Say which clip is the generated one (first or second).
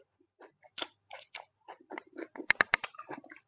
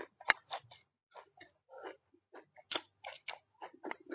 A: first